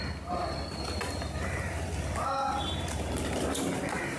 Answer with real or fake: real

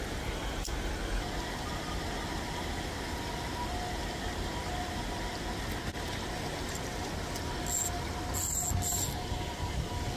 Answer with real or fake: real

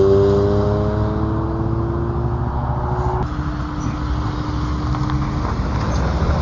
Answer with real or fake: real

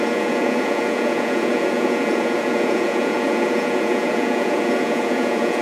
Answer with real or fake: fake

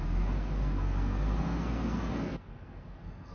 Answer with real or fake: fake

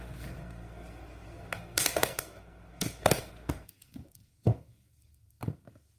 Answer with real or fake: fake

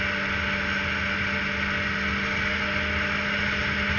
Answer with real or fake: real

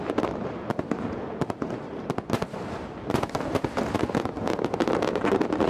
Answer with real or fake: real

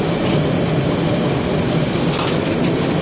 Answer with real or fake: real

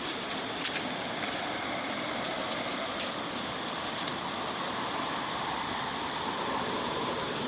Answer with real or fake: real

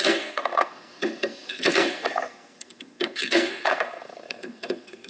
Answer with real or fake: fake